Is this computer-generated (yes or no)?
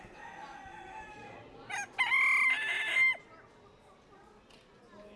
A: no